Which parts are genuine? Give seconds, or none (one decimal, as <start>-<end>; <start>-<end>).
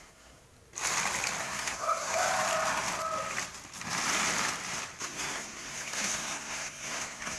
0.4-1.4; 2.3-5.0